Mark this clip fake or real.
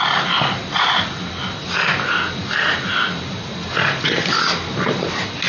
real